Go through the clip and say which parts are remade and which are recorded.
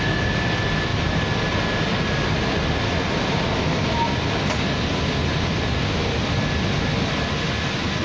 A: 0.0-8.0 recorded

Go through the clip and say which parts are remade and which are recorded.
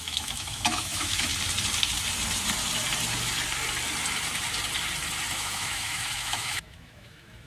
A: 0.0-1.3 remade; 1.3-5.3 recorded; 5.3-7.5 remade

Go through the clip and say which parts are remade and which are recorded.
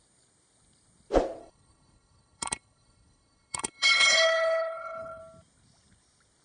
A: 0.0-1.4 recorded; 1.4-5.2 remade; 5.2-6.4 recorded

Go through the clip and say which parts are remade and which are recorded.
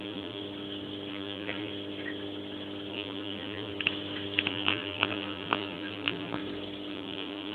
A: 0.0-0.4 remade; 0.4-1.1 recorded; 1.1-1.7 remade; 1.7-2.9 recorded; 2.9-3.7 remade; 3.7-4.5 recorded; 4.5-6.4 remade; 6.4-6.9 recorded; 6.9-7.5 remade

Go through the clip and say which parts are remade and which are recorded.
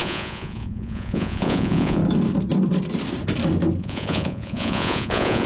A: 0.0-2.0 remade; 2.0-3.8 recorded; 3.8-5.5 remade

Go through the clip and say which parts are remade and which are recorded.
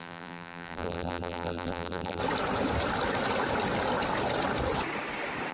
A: 0.0-2.2 remade; 2.2-5.5 recorded